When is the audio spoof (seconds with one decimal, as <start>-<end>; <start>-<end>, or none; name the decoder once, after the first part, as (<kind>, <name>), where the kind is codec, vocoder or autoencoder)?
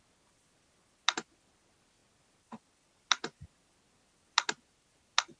none